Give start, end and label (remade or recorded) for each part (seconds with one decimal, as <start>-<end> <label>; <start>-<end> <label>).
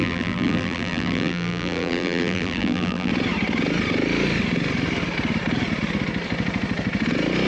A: 0.0-3.1 remade; 3.1-7.5 recorded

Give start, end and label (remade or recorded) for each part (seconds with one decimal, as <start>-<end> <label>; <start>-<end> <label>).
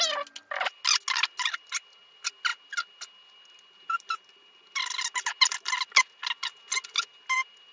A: 0.0-7.7 recorded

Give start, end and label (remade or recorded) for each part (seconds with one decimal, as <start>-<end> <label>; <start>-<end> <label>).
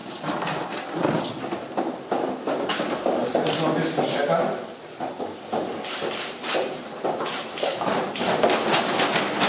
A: 0.0-1.2 remade; 1.2-3.2 recorded; 3.2-8.4 remade; 8.4-9.5 recorded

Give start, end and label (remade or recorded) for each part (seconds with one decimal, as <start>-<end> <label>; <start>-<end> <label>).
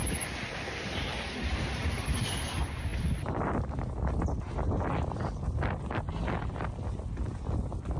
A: 0.0-8.0 recorded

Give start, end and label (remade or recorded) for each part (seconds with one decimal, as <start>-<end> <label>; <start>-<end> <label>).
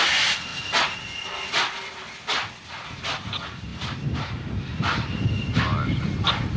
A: 0.0-3.7 recorded; 3.7-5.2 remade; 5.2-6.6 recorded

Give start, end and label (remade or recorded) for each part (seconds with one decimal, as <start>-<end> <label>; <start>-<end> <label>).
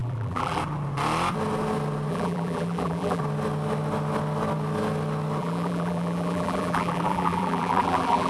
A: 0.0-0.6 remade; 0.6-2.1 recorded; 2.1-3.2 remade; 3.2-5.4 recorded; 5.4-8.3 remade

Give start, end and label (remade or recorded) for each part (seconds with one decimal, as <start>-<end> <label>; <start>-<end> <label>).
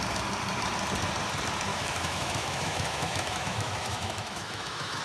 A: 0.0-1.7 recorded; 1.7-5.0 remade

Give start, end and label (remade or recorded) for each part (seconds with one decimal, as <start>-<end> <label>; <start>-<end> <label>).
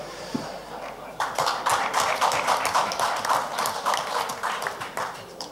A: 0.0-1.7 remade; 1.7-4.3 recorded; 4.3-5.5 remade